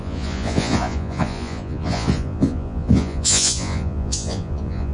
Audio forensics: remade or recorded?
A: remade